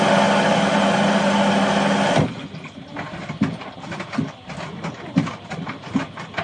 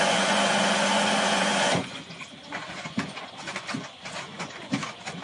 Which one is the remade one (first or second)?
second